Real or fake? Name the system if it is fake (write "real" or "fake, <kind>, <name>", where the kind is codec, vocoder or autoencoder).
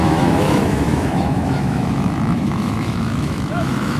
fake, autoencoder, DAC-VAE